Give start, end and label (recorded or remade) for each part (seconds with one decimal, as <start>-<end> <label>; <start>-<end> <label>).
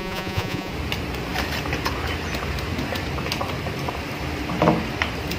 0.0-0.7 remade; 0.7-5.4 recorded